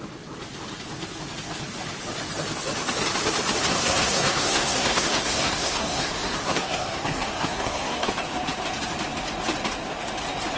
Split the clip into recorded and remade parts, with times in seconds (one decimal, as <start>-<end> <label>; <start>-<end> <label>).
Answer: 0.0-3.7 recorded; 3.7-8.1 remade; 8.1-10.6 recorded